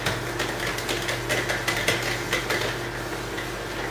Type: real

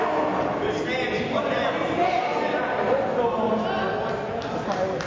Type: real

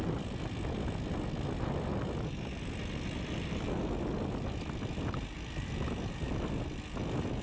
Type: real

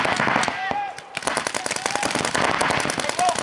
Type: real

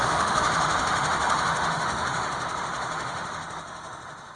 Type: fake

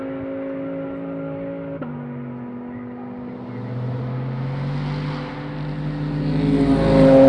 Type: real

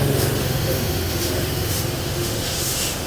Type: fake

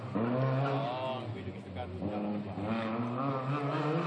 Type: real